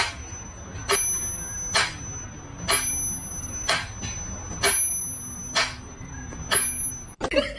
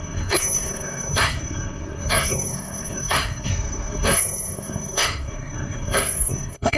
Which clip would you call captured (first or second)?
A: first